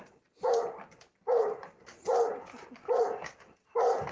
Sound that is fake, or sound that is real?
real